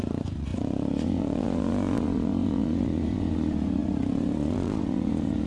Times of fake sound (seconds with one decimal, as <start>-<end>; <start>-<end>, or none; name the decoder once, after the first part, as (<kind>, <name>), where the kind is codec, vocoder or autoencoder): 0.0-5.5 (vocoder, Vocos)